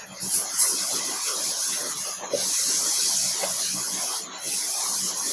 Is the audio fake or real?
real